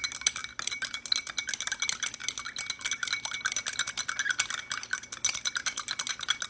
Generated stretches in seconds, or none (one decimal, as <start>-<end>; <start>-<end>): none